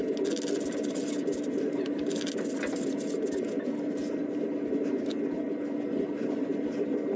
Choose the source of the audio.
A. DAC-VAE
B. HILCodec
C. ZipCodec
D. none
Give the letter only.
D